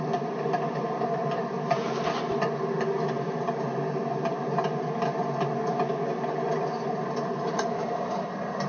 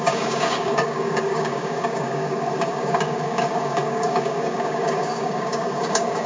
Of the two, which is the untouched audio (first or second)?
first